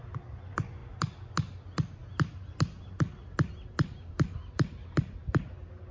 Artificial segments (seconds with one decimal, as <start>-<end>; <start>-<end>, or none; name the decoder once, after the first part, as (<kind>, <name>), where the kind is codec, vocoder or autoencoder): none